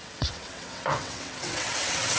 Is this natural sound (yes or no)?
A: no